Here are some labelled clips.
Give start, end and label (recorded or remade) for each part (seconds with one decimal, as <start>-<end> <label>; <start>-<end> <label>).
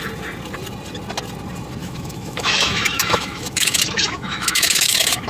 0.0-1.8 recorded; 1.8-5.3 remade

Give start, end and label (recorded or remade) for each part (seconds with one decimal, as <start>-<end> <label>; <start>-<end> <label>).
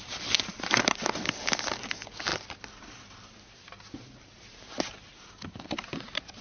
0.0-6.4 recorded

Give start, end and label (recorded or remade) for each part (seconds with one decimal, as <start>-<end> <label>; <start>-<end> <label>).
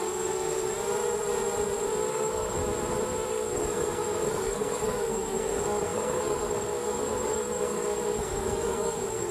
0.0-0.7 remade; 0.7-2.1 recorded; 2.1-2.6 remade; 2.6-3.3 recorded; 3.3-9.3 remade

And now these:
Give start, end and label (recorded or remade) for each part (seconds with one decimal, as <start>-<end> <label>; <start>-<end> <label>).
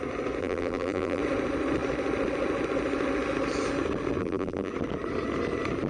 0.0-0.4 recorded; 0.4-1.2 remade; 1.2-4.2 recorded; 4.2-4.7 remade; 4.7-5.9 recorded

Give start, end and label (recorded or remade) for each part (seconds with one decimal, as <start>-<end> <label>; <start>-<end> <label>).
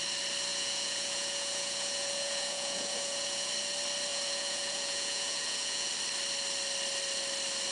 0.0-0.5 recorded; 0.5-3.5 remade; 3.5-4.1 recorded; 4.1-5.9 remade; 5.9-7.7 recorded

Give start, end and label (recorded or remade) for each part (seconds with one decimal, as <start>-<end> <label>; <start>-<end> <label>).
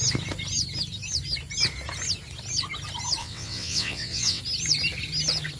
0.0-3.2 recorded; 3.2-4.4 remade; 4.4-5.6 recorded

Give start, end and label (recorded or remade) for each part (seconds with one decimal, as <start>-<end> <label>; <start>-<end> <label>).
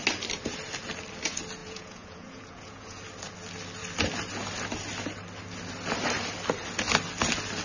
0.0-1.6 recorded; 1.6-3.0 remade; 3.0-7.6 recorded